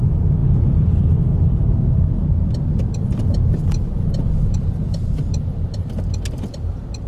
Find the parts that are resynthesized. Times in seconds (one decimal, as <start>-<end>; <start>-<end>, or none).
0.4-1.0